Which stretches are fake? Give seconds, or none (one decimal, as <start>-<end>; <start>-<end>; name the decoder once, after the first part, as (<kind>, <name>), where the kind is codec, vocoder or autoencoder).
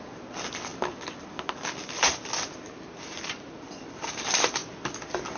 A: none